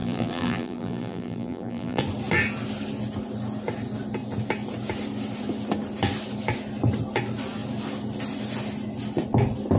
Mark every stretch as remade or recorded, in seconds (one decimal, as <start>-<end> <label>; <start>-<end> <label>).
0.0-2.0 remade; 2.0-9.8 recorded